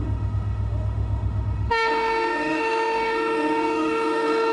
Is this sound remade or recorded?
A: remade